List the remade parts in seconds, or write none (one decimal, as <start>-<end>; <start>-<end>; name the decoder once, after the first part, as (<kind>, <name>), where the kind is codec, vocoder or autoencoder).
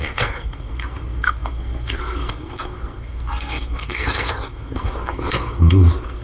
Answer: 0.0-6.2 (codec, SNAC)